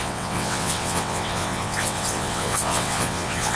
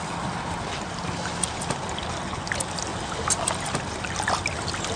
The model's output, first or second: first